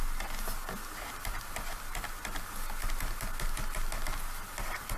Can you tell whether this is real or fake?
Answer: real